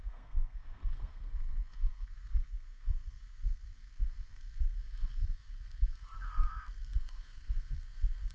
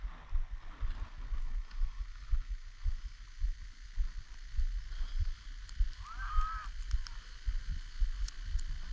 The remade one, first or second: first